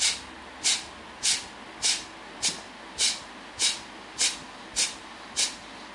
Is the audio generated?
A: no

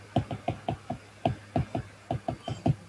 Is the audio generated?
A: no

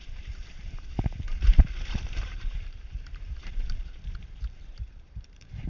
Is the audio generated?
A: yes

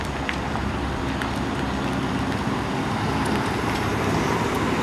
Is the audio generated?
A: no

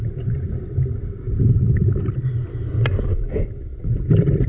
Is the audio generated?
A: no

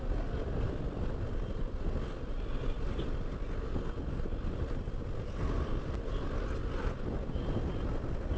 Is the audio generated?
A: no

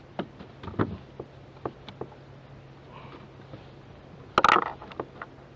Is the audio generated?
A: no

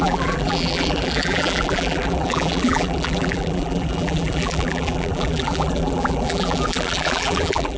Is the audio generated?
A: yes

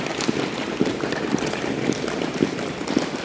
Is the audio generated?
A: yes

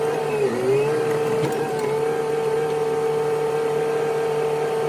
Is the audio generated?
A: no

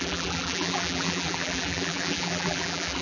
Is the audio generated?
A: yes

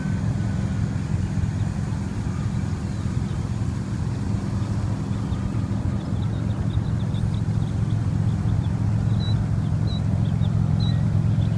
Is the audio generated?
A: no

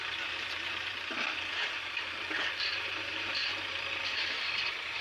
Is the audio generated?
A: yes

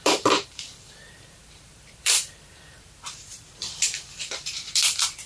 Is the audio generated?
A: yes